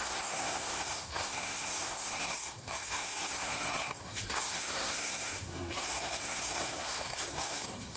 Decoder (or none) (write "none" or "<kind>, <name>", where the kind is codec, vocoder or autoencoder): codec, SNAC